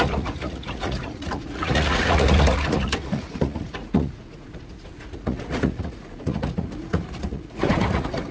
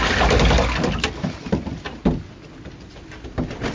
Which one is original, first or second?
second